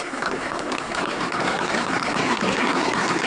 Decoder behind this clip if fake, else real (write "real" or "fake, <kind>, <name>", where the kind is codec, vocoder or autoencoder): fake, codec, SNAC